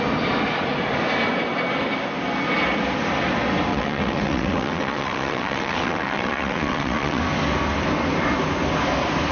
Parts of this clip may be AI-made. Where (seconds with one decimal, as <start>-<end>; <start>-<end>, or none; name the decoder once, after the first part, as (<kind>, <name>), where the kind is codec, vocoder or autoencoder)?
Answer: 3.7-7.2 (vocoder, WaveNeXt)